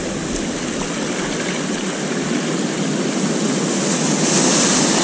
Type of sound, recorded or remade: recorded